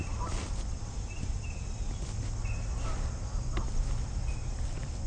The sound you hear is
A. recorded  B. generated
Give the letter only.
A